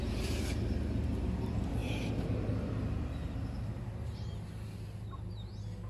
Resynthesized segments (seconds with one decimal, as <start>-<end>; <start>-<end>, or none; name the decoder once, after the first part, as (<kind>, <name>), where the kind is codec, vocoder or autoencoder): none